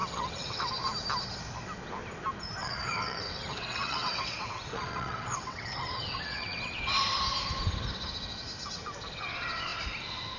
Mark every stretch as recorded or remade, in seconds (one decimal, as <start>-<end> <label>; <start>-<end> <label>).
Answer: 0.0-0.7 remade; 0.7-2.6 recorded; 2.6-7.0 remade; 7.0-10.4 recorded